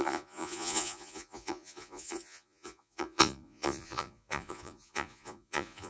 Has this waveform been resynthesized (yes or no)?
yes